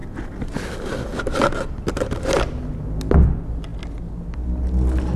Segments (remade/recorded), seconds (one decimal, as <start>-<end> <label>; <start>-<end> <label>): 0.0-5.2 recorded